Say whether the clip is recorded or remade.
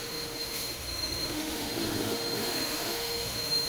remade